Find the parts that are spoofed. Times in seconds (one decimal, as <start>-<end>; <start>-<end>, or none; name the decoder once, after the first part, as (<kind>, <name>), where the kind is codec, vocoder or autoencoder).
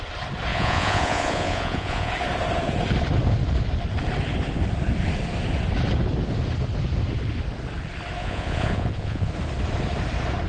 0.5-2.1 (vocoder, Vocos); 8.2-9.3